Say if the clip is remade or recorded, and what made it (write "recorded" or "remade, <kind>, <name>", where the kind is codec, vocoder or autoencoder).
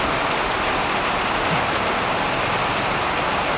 recorded